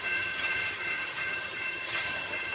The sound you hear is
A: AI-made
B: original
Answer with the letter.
A